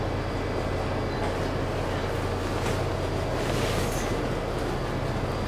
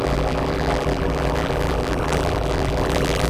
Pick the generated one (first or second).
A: second